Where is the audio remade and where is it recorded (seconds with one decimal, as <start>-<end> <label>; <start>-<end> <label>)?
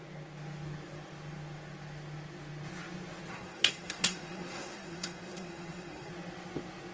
0.0-3.3 recorded; 3.3-6.1 remade; 6.1-6.9 recorded